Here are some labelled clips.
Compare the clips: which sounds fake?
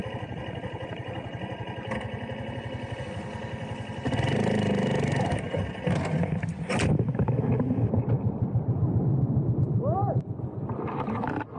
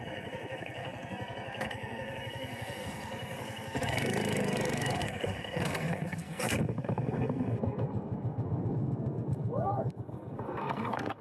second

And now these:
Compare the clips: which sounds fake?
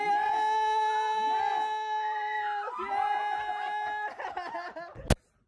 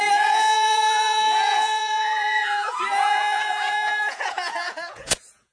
second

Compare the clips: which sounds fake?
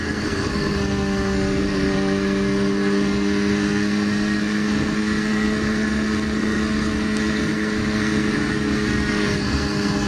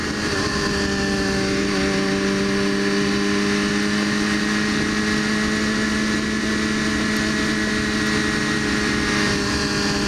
first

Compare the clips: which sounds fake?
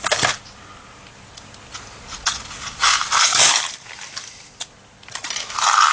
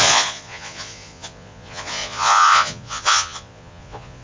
second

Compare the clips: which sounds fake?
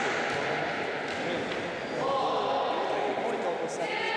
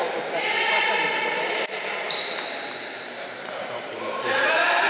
second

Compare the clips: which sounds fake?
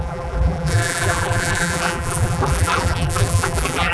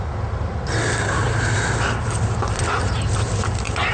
first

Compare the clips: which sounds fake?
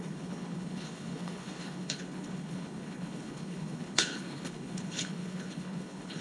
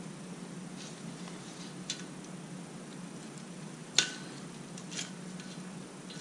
first